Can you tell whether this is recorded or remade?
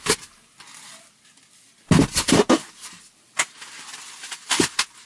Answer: recorded